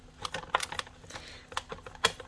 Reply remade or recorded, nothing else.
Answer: recorded